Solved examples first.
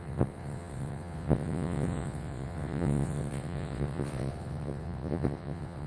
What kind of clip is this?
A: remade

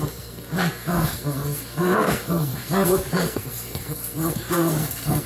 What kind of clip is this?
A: remade